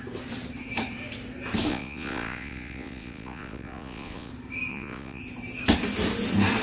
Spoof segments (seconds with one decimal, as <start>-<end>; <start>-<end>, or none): 1.7-4.3; 4.7-5.2